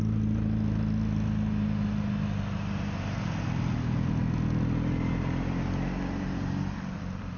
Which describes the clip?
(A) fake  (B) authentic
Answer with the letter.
B